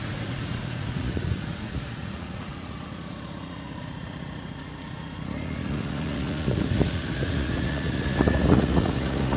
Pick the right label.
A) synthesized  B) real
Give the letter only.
A